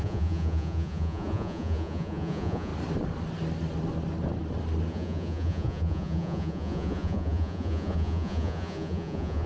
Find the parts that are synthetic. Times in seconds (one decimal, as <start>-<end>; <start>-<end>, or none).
0.0-2.7; 4.9-9.5